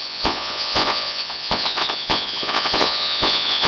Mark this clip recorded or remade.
remade